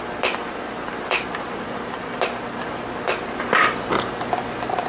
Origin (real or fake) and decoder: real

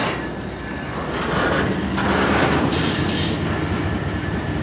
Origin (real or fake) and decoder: real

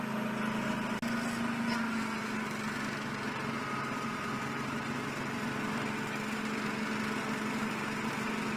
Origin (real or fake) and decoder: real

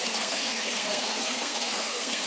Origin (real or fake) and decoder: fake, codec, SNAC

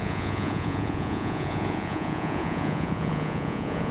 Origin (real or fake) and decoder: fake, vocoder, Vocos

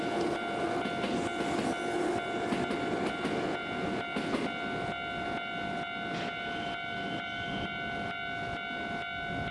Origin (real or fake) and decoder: real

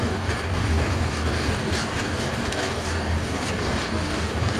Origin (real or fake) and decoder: fake, codec, DAC